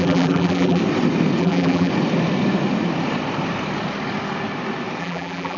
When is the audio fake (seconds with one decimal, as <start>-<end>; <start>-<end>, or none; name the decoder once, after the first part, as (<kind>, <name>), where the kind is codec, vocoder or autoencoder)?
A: 0.0-0.8 (vocoder, BigVGAN v2); 1.4-1.9; 5.0-5.6